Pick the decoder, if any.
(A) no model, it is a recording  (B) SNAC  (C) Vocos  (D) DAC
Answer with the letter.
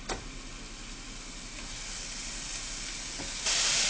A